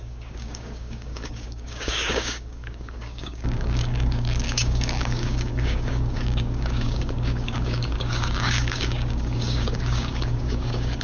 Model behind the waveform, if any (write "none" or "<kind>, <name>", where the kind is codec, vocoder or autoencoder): codec, DAC